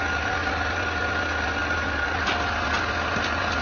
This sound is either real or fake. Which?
real